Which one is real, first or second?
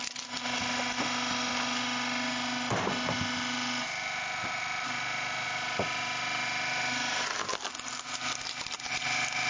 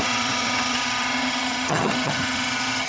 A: first